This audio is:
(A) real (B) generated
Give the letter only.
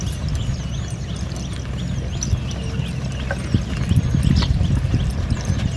A